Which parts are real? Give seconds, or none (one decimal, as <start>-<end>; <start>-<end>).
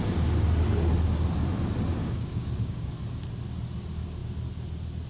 0.0-2.0; 2.9-5.1